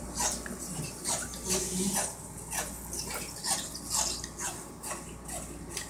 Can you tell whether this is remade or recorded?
recorded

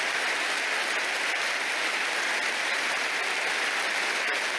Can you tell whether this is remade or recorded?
recorded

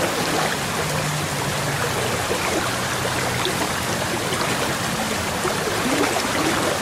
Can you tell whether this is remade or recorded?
recorded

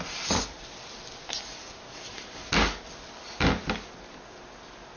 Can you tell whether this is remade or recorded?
recorded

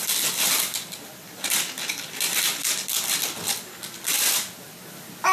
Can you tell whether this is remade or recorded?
recorded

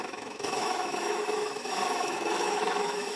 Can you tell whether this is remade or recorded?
remade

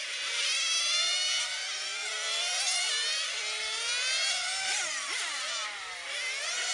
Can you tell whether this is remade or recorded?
recorded